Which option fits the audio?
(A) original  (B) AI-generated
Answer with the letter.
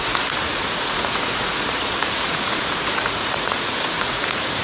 B